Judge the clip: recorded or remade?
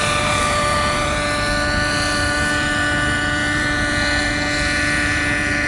remade